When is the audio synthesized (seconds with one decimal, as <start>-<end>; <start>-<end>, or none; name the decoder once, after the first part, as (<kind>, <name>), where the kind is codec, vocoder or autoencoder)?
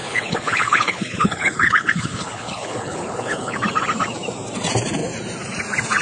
0.0-3.6 (codec, HILCodec)